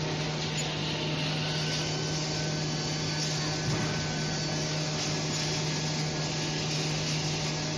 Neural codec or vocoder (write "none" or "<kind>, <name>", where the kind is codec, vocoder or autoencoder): none